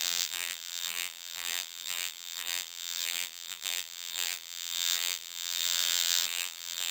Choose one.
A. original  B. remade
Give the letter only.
B